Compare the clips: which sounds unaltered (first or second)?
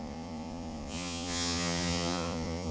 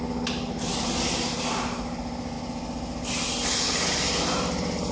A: second